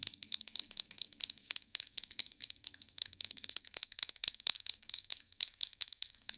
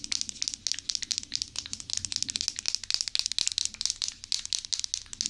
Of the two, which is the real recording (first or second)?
second